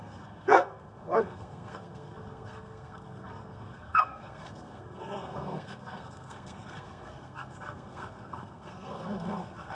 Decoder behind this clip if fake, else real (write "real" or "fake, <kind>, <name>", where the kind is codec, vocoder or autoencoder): fake, codec, SNAC